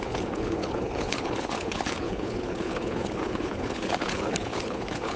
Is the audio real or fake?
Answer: fake